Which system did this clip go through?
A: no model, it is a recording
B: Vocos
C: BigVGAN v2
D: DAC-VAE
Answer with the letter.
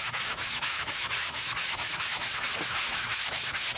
D